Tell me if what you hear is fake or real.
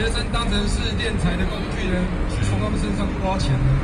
real